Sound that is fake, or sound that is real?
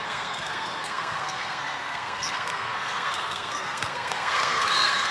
fake